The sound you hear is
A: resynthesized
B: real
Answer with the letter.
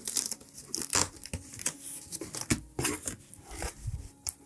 B